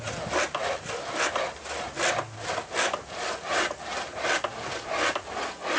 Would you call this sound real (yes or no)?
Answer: yes